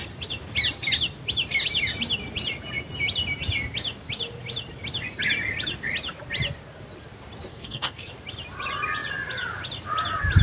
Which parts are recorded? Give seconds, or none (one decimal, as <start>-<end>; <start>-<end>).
0.0-7.5; 8.1-10.4